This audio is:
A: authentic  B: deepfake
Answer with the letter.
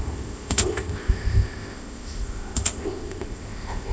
B